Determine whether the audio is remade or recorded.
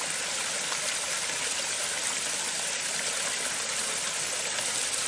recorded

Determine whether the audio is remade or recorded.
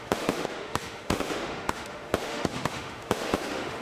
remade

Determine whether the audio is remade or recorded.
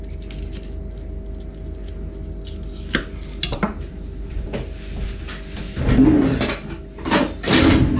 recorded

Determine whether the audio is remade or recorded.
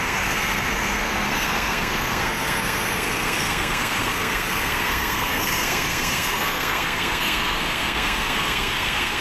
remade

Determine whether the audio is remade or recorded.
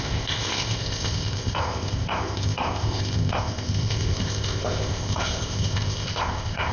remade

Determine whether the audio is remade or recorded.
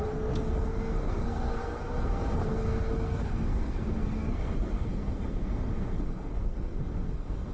remade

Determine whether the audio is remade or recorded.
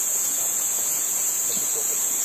remade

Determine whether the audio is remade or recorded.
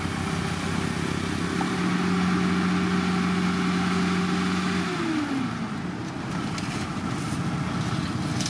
recorded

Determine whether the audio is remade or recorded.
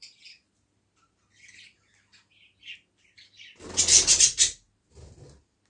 recorded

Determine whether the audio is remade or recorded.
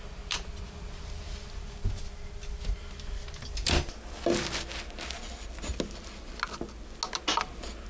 recorded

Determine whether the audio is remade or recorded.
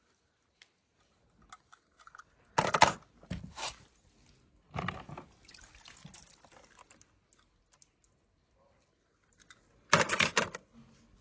recorded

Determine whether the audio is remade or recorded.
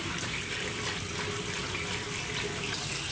recorded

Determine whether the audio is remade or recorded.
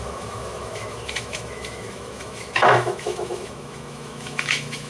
remade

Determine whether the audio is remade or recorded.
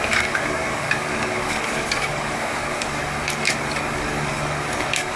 remade